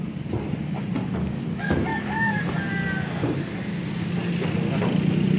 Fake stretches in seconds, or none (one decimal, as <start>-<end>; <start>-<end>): 1.0-1.5; 1.9-2.4